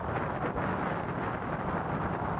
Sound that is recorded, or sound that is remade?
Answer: recorded